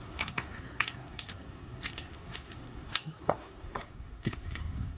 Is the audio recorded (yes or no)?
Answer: no